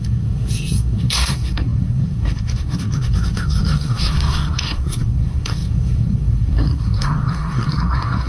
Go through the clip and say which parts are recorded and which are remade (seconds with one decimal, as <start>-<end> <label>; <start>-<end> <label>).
0.0-8.3 remade